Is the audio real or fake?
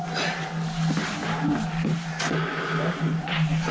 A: real